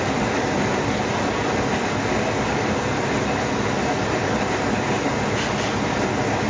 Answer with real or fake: real